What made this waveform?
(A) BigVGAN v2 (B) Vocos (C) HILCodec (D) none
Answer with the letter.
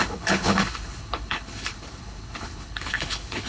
C